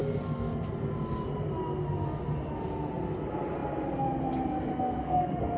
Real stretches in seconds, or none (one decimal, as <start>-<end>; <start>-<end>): 0.0-4.7